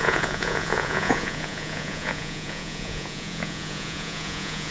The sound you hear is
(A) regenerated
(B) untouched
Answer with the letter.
A